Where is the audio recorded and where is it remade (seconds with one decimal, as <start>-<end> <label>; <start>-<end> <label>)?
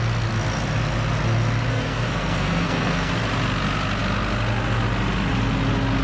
0.0-1.7 recorded; 1.7-3.1 remade; 3.1-6.0 recorded